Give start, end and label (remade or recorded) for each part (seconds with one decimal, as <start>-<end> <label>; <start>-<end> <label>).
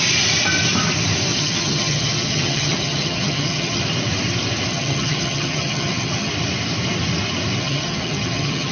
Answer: 0.0-1.3 recorded; 1.3-3.8 remade; 3.8-4.7 recorded; 4.7-6.3 remade; 6.3-7.6 recorded; 7.6-8.7 remade